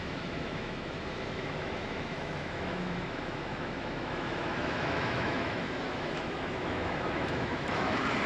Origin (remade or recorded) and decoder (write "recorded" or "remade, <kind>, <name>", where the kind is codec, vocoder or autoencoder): remade, autoencoder, DAC-VAE